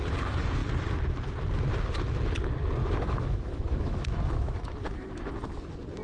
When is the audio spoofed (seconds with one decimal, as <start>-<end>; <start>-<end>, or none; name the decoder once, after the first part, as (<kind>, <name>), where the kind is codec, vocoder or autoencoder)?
2.8-5.3 (autoencoder, DAC-VAE)